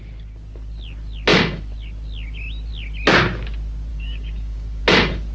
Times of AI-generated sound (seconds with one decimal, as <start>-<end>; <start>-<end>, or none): 3.9-4.8